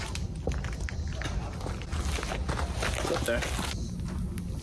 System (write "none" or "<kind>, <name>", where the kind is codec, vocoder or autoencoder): none